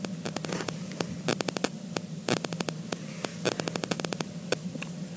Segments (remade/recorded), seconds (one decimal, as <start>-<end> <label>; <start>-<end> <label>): 0.0-5.2 recorded